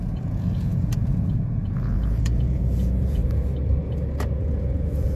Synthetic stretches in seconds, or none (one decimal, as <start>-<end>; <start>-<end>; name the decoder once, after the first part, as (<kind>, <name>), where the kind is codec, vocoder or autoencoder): 0.0-3.2 (vocoder, Vocos); 4.4-5.2